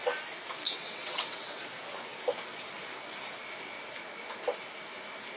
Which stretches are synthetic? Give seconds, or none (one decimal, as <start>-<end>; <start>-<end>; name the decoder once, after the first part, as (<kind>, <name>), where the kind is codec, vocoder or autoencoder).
0.6-1.6 (vocoder, WaveNeXt)